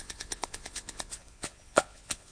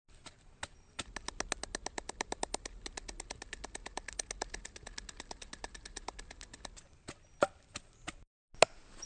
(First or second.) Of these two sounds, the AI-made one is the first